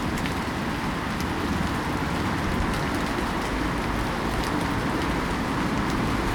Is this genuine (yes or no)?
yes